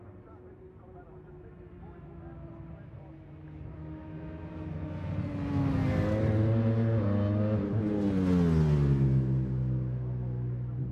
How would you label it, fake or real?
real